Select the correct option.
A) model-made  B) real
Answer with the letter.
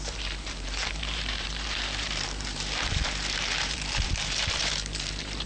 A